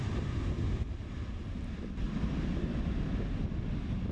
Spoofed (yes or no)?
no